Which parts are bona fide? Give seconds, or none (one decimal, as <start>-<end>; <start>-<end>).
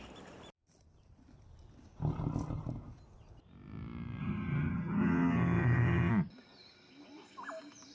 0.0-4.2; 6.1-7.9